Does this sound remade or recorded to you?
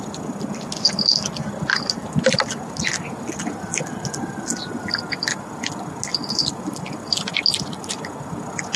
recorded